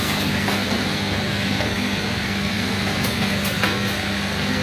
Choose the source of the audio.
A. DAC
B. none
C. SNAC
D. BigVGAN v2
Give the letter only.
C